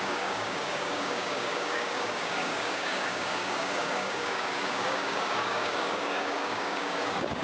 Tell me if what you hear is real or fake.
fake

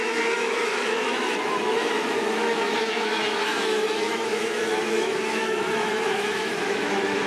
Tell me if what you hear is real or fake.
fake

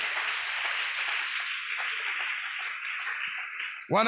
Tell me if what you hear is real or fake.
real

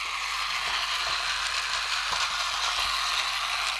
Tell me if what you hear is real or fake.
real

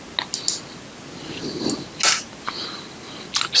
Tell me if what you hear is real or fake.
real